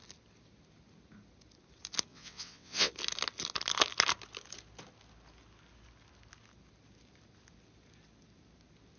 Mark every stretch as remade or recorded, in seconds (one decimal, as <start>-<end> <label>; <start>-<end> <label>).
0.0-2.1 recorded; 2.1-2.9 remade; 2.9-9.0 recorded